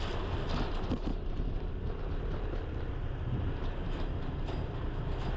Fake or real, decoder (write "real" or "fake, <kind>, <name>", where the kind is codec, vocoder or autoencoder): real